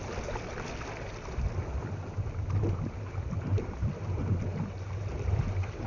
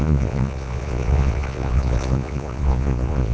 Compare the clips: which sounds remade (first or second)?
second